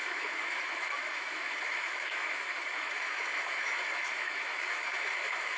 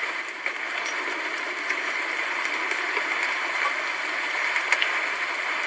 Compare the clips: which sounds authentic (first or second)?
second